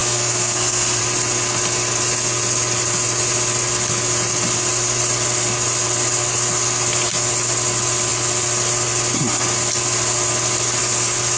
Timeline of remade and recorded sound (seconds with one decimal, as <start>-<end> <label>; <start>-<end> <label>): 0.0-1.0 remade; 1.0-11.4 recorded